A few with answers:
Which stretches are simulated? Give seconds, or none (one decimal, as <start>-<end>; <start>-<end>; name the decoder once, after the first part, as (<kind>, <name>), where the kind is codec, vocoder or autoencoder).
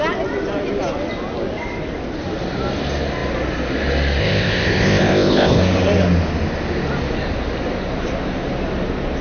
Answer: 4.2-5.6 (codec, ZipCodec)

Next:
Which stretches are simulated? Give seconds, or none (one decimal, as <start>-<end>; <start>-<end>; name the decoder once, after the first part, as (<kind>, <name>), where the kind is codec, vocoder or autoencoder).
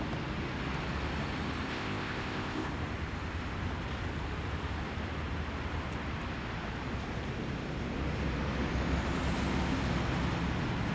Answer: 1.7-2.7 (codec, ZipCodec)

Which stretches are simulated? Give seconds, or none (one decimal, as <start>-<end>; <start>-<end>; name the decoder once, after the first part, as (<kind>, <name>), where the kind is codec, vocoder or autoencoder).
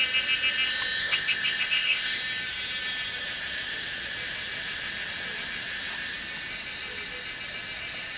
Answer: 1.0-2.2 (codec, ZipCodec)